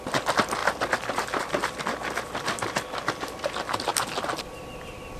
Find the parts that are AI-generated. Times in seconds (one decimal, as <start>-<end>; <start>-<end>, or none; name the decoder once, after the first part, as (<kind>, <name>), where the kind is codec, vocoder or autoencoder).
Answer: none